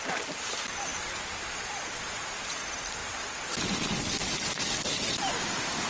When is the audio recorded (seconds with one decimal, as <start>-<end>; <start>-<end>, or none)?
0.0-5.9

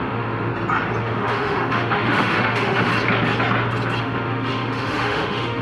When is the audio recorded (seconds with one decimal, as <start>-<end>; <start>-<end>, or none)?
0.5-1.0; 2.9-4.0

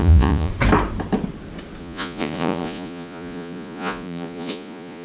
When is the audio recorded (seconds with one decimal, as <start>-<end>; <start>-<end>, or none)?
0.5-1.8

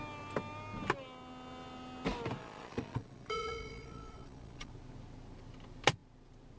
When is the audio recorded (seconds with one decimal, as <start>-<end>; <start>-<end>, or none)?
0.0-2.4; 4.7-6.6

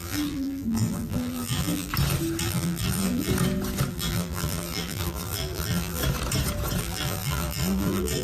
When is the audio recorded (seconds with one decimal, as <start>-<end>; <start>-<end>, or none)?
1.9-2.4; 3.3-3.9; 6.0-6.8